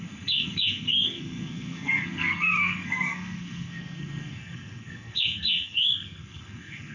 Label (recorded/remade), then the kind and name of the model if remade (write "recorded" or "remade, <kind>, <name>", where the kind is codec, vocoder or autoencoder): remade, codec, SNAC